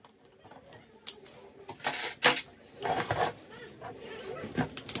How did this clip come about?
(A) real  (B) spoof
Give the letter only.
A